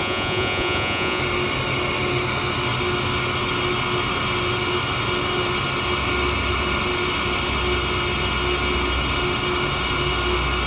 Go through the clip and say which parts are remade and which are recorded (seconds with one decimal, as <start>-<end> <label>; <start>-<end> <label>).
0.0-1.2 remade; 1.2-10.7 recorded